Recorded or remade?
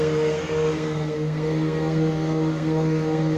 remade